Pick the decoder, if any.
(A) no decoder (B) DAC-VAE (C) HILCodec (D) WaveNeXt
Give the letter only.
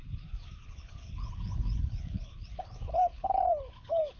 C